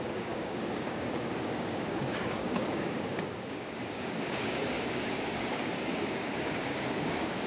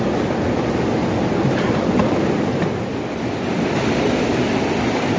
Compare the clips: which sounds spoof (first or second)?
first